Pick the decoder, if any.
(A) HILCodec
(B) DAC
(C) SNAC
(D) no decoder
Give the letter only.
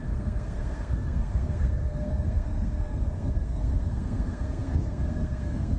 C